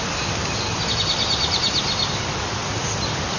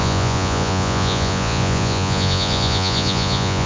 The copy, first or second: second